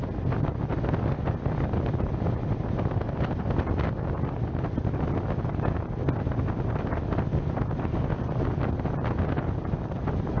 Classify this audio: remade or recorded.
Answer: recorded